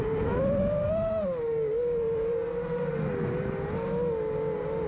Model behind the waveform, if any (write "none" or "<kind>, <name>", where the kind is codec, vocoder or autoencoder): none